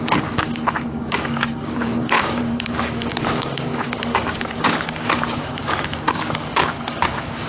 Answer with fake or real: fake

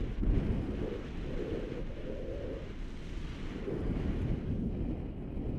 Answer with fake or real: real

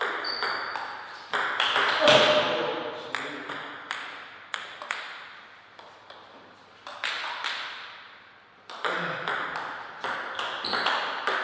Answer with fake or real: real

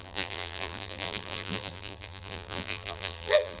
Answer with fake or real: fake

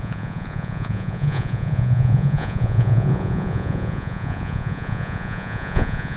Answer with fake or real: fake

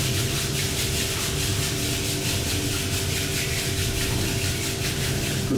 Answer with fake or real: real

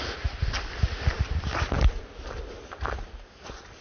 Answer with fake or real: real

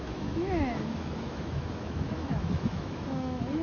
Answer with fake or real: fake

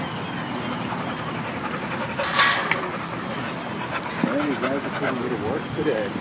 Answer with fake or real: real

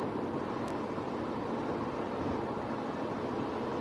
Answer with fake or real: real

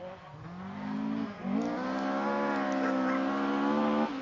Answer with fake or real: real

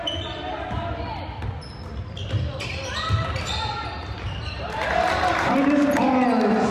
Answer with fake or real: real